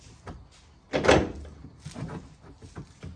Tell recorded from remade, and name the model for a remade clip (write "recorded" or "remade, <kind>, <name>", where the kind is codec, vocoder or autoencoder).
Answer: recorded